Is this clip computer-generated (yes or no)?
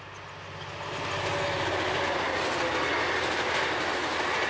no